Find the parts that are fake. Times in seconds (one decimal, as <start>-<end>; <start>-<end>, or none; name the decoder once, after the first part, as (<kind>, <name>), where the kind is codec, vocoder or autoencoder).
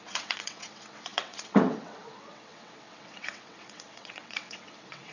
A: 0.0-5.1 (vocoder, WaveNeXt)